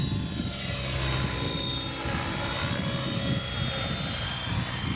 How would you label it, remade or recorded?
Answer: recorded